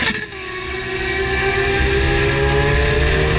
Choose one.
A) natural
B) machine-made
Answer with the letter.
A